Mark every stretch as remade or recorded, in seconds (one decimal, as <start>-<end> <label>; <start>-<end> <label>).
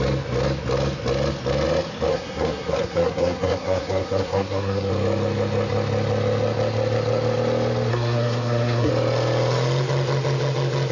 0.0-2.1 recorded; 2.1-4.9 remade; 4.9-7.9 recorded; 7.9-8.9 remade; 8.9-10.9 recorded